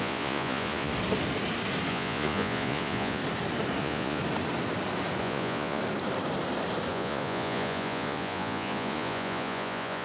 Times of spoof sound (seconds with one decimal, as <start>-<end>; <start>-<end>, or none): 0.0-0.9; 1.9-3.2; 3.8-4.2; 5.2-5.8; 6.9-10.0